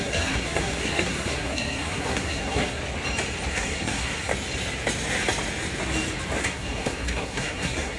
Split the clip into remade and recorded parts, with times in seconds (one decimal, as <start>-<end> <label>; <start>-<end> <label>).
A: 0.0-2.8 remade; 2.8-3.5 recorded; 3.5-4.3 remade; 4.3-6.4 recorded; 6.4-8.0 remade